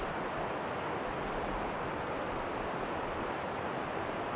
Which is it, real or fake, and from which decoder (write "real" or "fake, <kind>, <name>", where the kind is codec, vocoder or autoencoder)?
real